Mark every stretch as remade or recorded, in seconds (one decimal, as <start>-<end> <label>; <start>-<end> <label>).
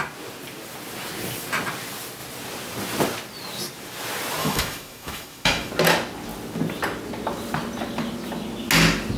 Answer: 0.0-4.4 recorded; 4.4-5.7 remade; 5.7-9.2 recorded